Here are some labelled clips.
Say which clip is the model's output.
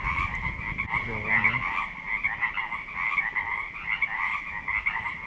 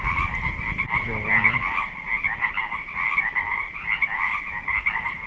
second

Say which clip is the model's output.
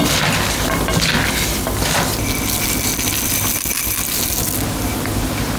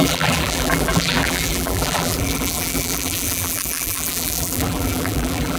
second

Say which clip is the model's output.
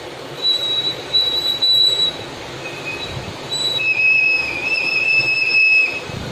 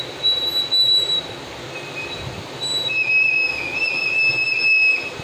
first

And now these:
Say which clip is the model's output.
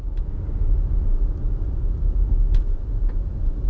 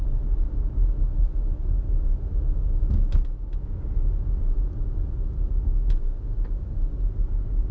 first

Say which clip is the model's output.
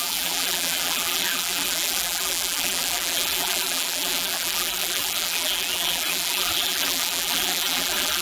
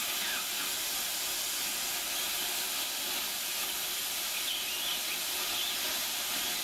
first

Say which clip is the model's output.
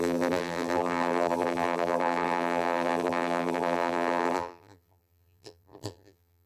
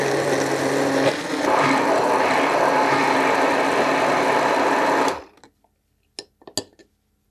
first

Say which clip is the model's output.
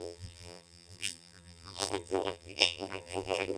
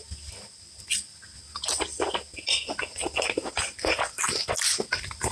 first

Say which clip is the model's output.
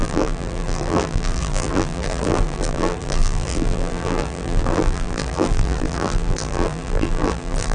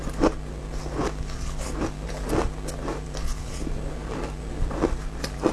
first